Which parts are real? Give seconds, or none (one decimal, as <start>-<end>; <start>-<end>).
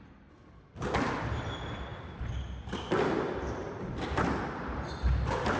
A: 0.0-5.6